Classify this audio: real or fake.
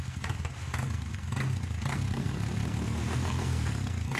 fake